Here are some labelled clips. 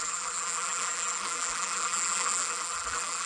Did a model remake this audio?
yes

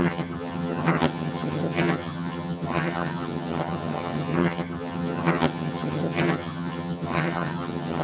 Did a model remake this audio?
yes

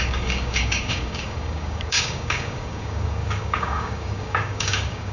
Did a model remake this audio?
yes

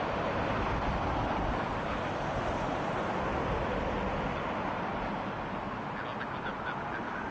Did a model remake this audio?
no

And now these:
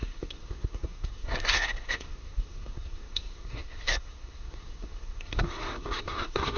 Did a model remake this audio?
yes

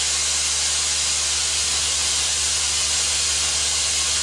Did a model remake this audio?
no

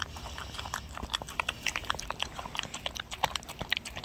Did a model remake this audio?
no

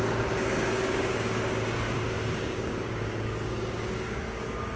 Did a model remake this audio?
yes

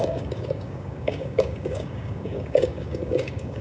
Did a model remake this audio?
yes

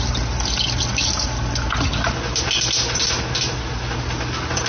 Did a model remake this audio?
no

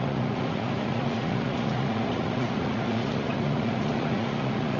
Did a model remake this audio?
yes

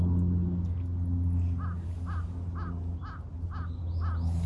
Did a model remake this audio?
no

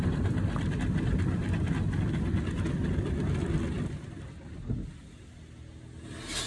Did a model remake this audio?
no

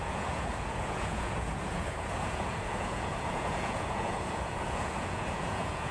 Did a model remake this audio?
yes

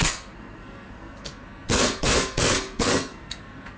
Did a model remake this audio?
yes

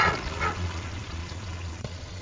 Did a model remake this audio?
yes